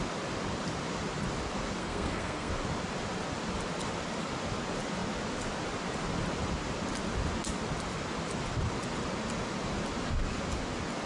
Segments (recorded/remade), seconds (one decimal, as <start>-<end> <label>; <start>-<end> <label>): 0.0-1.8 recorded; 1.8-2.5 remade; 2.5-11.1 recorded